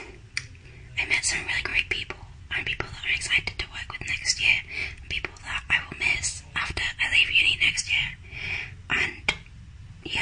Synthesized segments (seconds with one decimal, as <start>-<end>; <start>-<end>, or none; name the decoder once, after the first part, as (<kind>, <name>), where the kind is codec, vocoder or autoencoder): none